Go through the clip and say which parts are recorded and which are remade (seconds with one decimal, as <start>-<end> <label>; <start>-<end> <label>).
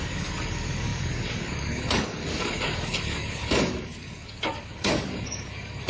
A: 0.0-5.9 remade